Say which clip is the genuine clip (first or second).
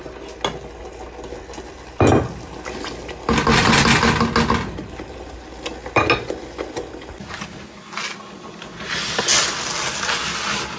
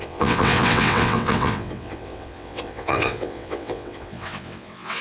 first